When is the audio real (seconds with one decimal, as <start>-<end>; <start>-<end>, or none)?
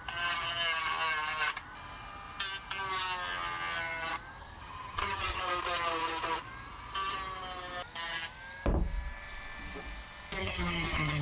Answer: 0.0-4.4; 5.4-10.4